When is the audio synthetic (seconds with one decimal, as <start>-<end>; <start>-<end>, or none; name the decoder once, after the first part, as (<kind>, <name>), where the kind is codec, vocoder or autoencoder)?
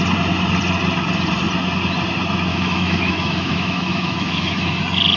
2.5-4.8 (autoencoder, DAC-VAE)